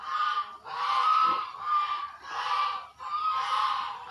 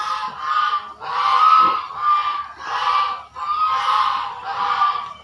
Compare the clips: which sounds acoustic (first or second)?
second